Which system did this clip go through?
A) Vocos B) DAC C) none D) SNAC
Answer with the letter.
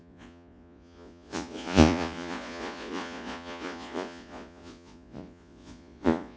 A